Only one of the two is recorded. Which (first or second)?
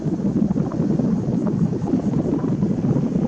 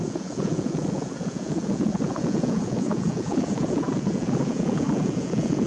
first